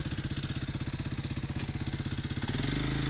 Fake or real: real